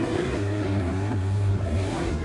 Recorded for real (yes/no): no